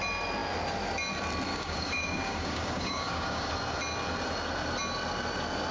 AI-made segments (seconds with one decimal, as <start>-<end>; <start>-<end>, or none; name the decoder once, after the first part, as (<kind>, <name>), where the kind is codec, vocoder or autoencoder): 1.5-3.5 (codec, DAC)